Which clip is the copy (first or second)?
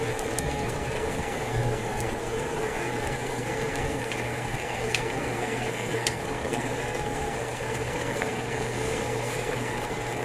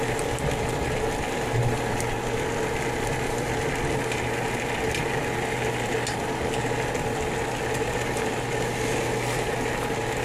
first